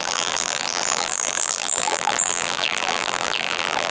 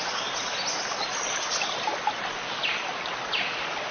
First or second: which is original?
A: second